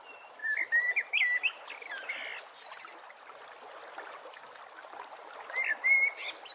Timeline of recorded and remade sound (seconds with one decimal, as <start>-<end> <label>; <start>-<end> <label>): 0.0-6.5 recorded